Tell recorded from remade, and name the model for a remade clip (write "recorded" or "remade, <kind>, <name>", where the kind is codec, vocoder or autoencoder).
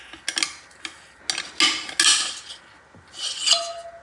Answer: recorded